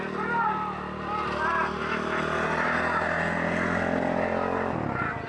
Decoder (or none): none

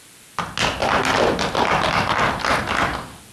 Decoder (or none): none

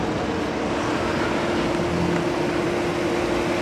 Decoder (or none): none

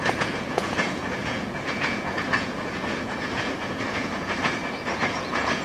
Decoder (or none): vocoder, Vocos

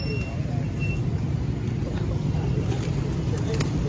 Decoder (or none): none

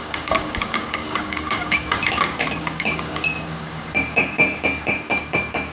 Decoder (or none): codec, DAC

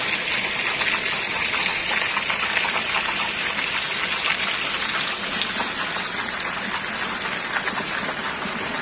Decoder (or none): vocoder, BigVGAN v2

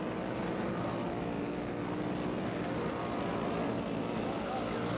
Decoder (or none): none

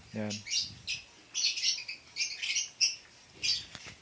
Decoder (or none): none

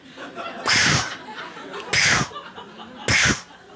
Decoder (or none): none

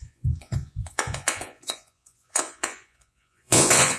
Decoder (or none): vocoder, Vocos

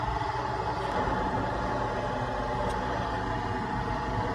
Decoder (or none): none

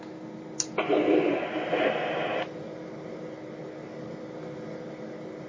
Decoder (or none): none